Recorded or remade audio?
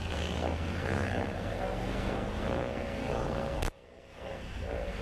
remade